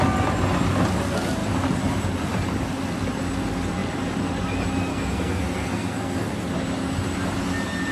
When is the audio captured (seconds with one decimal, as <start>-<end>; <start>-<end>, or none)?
0.0-4.9; 6.4-7.9